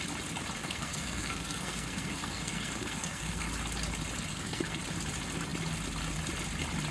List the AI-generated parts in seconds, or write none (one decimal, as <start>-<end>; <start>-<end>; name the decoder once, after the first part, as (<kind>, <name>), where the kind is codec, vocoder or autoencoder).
0.6-3.5 (codec, SNAC); 4.3-4.8